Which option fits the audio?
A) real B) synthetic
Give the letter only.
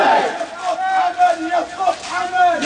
A